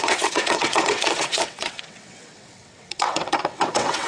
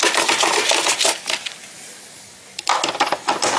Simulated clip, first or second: first